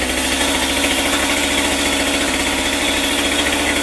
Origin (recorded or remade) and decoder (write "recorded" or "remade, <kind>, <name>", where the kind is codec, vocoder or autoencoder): recorded